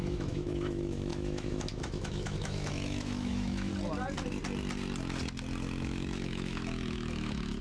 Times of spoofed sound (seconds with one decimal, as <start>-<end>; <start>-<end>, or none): 0.0-3.7; 5.8-7.6